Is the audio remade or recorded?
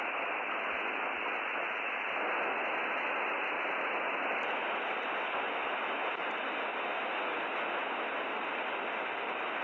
recorded